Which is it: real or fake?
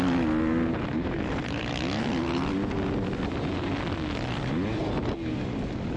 real